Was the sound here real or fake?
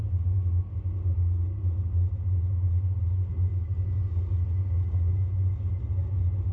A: real